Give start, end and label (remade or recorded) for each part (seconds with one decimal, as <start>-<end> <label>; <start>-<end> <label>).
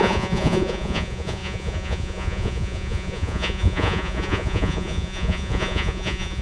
0.0-6.4 remade